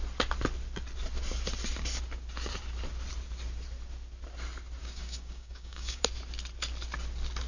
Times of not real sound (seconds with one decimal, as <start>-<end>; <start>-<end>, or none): 4.8-6.0